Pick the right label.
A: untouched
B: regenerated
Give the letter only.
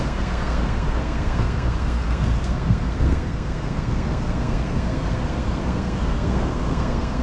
B